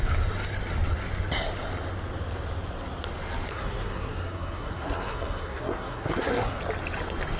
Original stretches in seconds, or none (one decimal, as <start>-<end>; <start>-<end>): 0.0-3.5; 6.6-7.4